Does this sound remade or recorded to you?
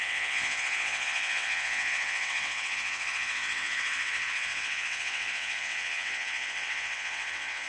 remade